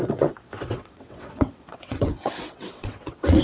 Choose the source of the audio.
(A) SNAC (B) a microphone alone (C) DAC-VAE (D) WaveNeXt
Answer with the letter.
D